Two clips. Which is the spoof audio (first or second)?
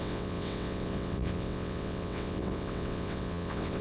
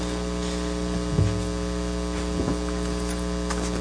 first